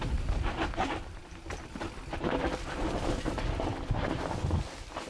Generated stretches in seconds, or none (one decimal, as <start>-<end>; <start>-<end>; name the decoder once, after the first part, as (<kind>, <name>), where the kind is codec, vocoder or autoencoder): none